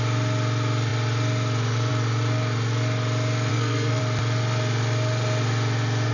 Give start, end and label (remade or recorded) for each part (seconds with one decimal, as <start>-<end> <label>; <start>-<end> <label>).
0.0-3.5 recorded; 3.5-4.0 remade; 4.0-6.1 recorded